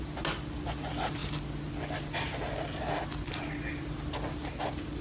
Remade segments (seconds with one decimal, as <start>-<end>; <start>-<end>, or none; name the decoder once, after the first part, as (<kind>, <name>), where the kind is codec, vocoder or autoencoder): none